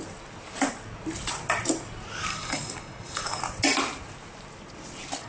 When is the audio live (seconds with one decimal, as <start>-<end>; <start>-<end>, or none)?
0.0-2.3; 3.4-5.3